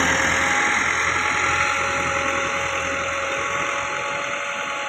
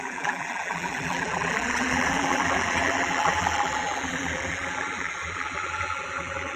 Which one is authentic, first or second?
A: first